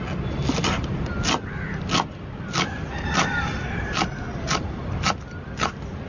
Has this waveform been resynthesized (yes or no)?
no